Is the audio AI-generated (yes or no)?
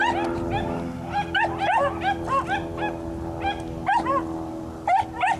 no